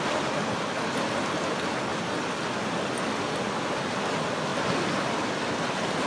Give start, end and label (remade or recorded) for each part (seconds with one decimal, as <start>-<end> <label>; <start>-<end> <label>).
0.0-6.1 recorded